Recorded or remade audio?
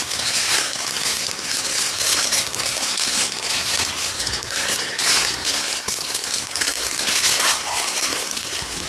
remade